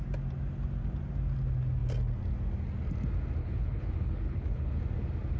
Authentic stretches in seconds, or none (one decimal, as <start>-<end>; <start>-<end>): 0.0-3.4; 4.8-5.4